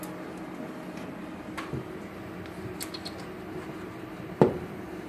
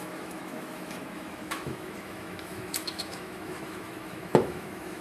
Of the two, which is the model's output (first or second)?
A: second